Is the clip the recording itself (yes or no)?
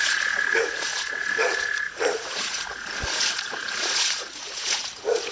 no